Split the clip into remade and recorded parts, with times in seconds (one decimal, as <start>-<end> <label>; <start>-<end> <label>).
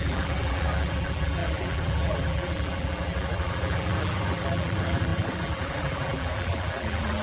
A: 0.0-7.2 remade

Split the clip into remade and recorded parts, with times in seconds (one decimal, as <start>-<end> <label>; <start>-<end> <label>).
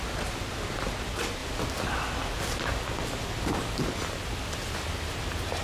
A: 0.0-5.6 recorded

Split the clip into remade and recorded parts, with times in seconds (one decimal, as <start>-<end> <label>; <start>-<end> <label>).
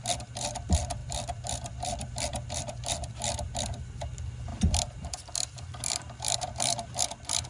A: 0.0-1.0 recorded; 1.0-4.0 remade; 4.0-4.5 recorded; 4.5-7.0 remade; 7.0-7.5 recorded